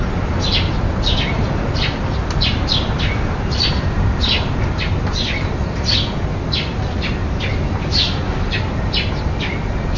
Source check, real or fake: real